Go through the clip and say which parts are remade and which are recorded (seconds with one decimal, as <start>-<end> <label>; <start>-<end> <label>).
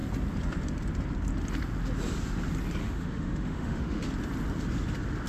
0.0-2.8 recorded; 2.8-4.1 remade; 4.1-5.3 recorded